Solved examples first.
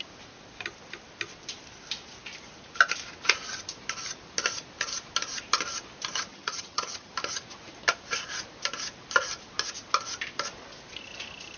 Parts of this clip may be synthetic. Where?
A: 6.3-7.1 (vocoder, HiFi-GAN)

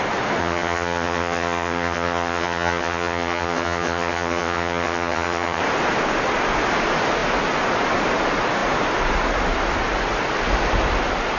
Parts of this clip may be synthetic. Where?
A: 0.4-5.6 (vocoder, HiFi-GAN)

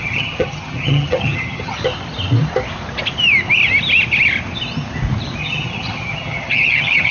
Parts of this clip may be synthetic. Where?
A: 0.0-1.8 (vocoder, HiFi-GAN); 5.4-7.1